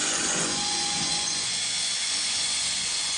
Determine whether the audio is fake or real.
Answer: fake